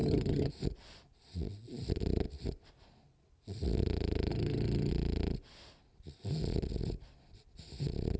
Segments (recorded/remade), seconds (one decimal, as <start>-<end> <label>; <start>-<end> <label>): 0.0-0.5 remade; 0.5-4.3 recorded; 4.3-4.9 remade; 4.9-8.2 recorded